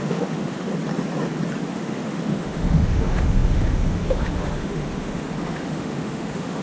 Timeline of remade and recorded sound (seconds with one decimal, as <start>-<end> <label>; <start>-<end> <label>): 0.0-0.7 remade; 0.7-1.7 recorded; 1.7-6.6 remade